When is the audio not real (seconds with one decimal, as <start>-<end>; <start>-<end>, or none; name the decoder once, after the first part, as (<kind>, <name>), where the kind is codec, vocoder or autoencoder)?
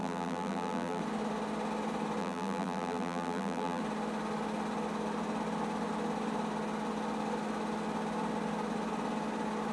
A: 0.0-1.0 (vocoder, BigVGAN v2); 2.2-3.8